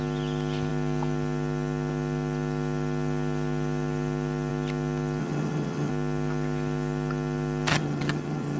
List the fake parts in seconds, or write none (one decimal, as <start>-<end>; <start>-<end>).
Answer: 5.2-5.9; 7.7-8.6